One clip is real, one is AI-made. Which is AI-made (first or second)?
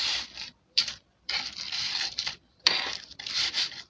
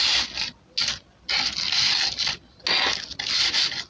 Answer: first